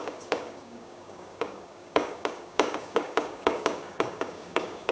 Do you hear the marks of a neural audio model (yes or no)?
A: yes